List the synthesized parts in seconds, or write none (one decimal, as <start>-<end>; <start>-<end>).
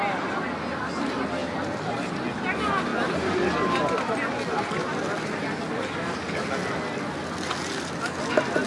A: 1.4-2.1; 2.9-4.0